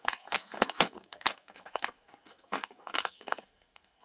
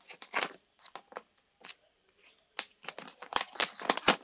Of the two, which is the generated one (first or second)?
first